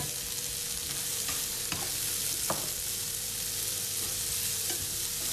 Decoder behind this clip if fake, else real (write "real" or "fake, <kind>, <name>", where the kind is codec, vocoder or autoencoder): real